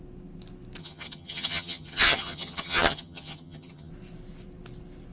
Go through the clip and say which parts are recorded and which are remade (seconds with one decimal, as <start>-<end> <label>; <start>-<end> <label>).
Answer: 0.0-0.8 recorded; 0.8-3.9 remade; 3.9-5.1 recorded